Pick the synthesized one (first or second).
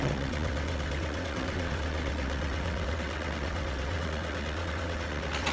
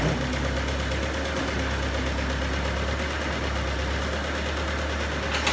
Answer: first